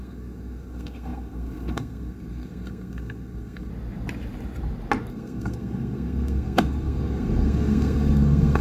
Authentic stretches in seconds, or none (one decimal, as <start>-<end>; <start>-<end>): 3.7-5.1